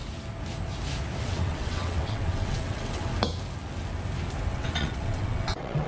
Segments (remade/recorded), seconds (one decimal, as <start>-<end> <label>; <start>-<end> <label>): 0.0-1.2 recorded; 1.2-3.1 remade; 3.1-4.5 recorded; 4.5-5.9 remade